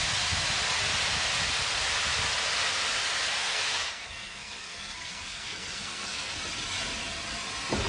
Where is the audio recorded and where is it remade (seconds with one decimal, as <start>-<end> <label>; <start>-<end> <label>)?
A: 0.0-3.4 recorded; 3.4-6.4 remade; 6.4-7.9 recorded